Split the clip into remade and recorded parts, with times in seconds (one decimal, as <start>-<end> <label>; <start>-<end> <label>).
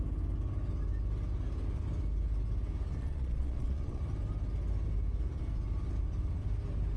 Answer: 0.0-3.0 recorded; 3.0-4.0 remade; 4.0-7.0 recorded